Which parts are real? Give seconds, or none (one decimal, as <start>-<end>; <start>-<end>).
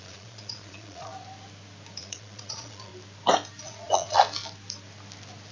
1.1-2.0; 2.9-3.6; 4.2-5.5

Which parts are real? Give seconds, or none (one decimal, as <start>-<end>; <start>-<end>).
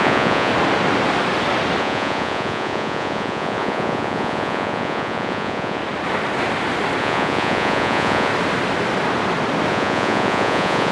0.5-1.8; 5.8-7.0; 8.3-9.7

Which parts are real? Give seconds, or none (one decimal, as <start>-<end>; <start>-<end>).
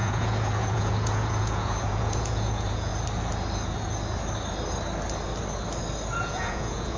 2.9-6.1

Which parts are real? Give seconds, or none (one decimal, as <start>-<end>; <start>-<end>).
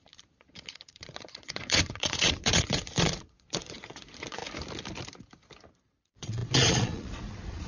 4.4-6.0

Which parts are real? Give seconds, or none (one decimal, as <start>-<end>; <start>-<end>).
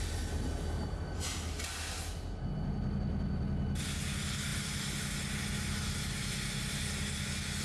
0.0-7.6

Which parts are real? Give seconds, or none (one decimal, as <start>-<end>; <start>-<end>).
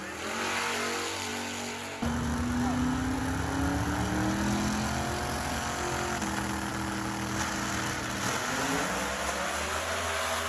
0.0-10.5